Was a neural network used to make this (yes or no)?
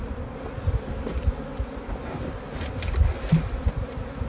no